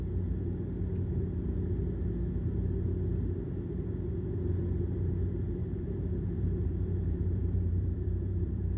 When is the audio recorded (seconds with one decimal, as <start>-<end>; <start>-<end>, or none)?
0.0-5.6